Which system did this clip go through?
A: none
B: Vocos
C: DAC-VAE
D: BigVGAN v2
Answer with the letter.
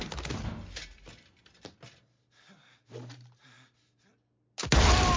A